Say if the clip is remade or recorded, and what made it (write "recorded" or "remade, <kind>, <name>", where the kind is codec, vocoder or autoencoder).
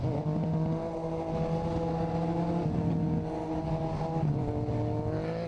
recorded